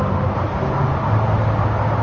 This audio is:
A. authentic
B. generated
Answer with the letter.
A